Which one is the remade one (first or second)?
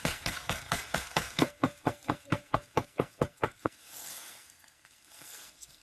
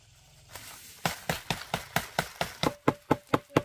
first